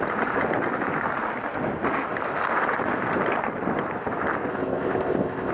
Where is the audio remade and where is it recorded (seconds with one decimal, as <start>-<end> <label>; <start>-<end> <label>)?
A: 0.0-4.5 recorded; 4.5-5.5 remade

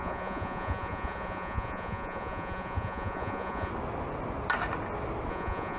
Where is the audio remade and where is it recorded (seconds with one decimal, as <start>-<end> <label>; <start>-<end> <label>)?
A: 0.0-3.7 remade; 3.7-5.3 recorded; 5.3-5.8 remade

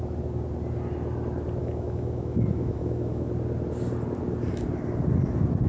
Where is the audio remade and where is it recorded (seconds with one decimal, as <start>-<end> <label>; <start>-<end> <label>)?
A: 0.0-1.6 recorded; 1.6-3.3 remade; 3.3-5.7 recorded